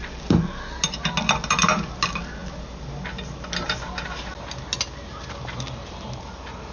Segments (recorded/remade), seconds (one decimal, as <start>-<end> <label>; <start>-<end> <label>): 0.0-6.7 recorded